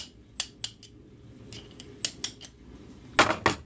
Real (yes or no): yes